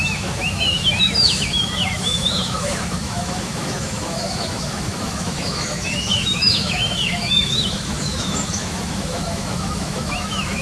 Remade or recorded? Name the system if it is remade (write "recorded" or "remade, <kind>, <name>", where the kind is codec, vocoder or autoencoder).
remade, autoencoder, DAC-VAE